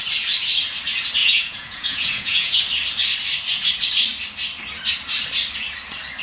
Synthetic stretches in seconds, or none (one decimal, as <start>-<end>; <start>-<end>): 1.2-2.6